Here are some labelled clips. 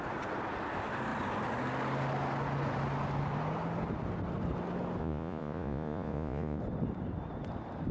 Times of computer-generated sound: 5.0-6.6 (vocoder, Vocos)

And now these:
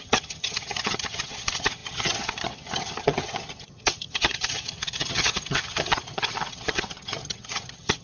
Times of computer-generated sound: 0.0-8.0 (vocoder, HiFi-GAN)